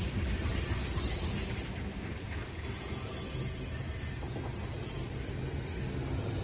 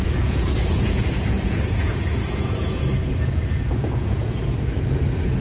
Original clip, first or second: first